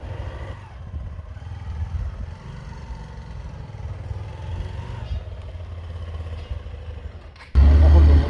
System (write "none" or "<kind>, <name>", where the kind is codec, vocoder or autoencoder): none